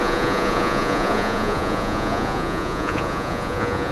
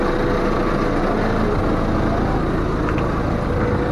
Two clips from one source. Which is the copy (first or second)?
first